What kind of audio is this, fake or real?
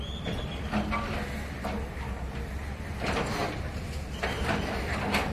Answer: real